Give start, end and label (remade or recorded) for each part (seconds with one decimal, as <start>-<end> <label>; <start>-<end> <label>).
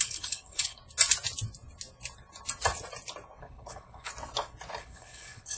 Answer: 0.0-0.8 remade; 0.8-3.4 recorded; 3.4-4.1 remade; 4.1-4.8 recorded; 4.8-5.6 remade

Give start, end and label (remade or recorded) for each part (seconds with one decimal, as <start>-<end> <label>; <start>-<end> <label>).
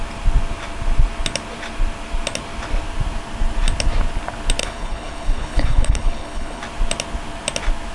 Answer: 0.0-4.6 recorded; 4.6-6.6 remade; 6.6-7.9 recorded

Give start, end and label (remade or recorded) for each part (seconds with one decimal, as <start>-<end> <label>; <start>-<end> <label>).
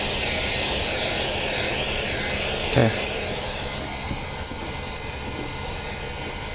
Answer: 0.0-6.5 recorded